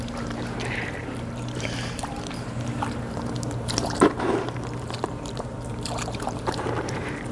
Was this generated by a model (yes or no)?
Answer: yes